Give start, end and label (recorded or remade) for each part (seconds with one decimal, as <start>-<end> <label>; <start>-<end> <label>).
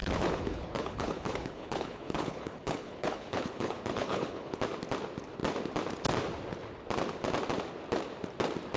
0.0-4.6 remade; 4.6-8.8 recorded